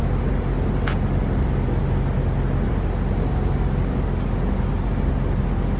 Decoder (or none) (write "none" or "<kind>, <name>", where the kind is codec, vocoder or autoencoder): none